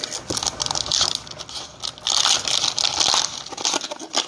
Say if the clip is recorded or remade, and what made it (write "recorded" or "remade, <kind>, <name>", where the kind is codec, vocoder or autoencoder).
recorded